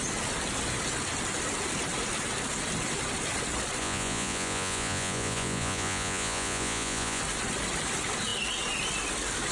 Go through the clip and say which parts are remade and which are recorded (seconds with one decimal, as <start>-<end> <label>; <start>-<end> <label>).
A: 0.0-3.8 recorded; 3.8-7.2 remade; 7.2-9.5 recorded